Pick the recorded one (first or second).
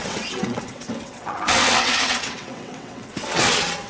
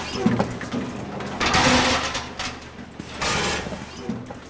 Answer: second